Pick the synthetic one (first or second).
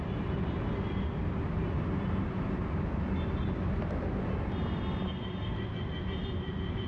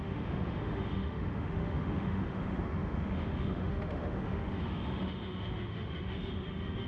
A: second